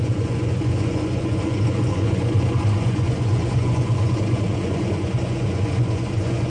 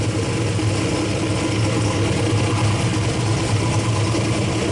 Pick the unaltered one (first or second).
second